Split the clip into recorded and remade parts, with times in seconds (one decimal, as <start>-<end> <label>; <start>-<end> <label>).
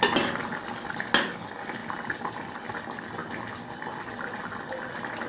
0.0-5.3 recorded